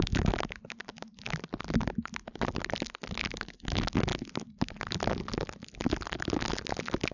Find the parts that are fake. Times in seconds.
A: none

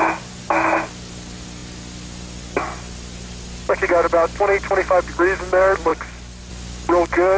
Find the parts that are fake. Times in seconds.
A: none

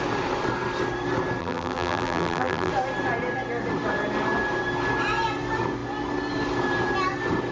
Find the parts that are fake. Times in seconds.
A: 1.4-2.7 (vocoder, BigVGAN v2)

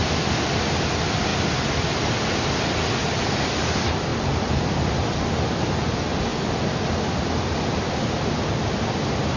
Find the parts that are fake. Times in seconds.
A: none